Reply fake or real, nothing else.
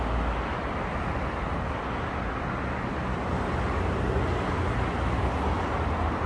real